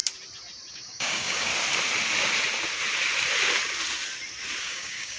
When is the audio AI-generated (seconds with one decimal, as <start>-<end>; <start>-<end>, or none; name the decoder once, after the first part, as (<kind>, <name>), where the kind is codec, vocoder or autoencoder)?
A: 0.7-1.5 (codec, DAC); 4.6-5.2